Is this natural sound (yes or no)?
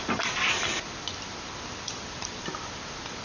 no